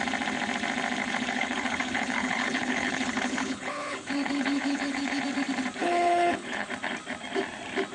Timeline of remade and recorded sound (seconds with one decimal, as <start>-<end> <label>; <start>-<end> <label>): 0.0-1.0 recorded; 1.0-5.2 remade; 5.2-5.8 recorded; 5.8-6.7 remade; 6.7-7.9 recorded